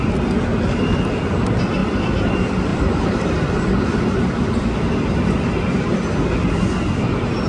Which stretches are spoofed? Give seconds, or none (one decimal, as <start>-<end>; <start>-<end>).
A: 1.8-2.3; 2.7-6.0